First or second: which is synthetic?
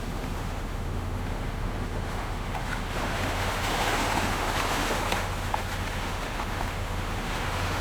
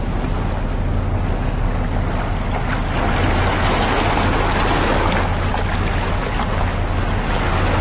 first